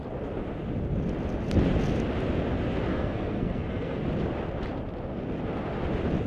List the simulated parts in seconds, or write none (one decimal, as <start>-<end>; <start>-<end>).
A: 2.9-4.0